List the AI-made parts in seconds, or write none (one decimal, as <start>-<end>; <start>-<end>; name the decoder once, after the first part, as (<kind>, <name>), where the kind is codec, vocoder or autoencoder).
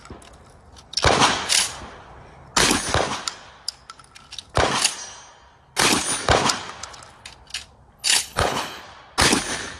8.0-8.8 (codec, HILCodec)